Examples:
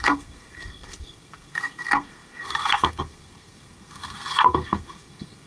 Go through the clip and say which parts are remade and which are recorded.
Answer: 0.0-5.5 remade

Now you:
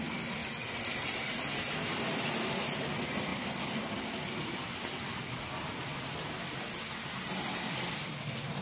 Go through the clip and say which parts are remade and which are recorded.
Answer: 0.0-5.9 recorded; 5.9-6.9 remade; 6.9-8.6 recorded